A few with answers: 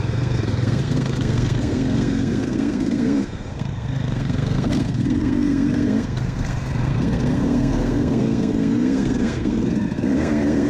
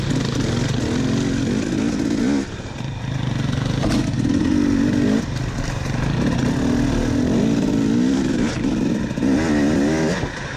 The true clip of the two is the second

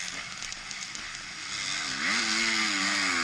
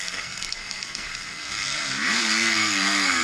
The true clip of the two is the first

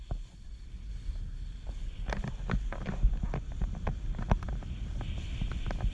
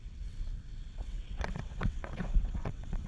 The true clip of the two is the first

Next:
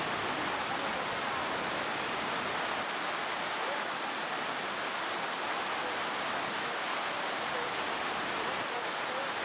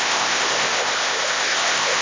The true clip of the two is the first